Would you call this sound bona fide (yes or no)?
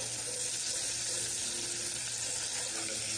yes